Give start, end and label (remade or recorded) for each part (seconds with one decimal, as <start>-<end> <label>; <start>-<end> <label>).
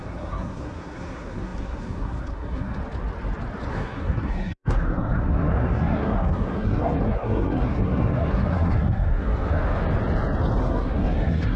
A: 0.0-2.8 remade; 2.8-3.7 recorded; 3.7-9.6 remade; 9.6-10.6 recorded; 10.6-11.6 remade